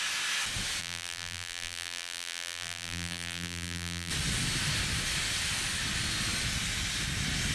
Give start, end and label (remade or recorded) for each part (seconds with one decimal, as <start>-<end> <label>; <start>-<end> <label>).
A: 0.0-0.8 recorded; 0.8-4.1 remade; 4.1-7.5 recorded